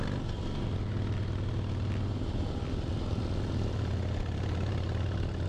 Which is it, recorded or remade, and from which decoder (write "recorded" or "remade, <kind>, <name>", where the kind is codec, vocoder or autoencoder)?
recorded